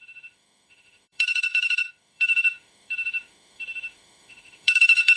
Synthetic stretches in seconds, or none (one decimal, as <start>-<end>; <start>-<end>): 0.0-5.2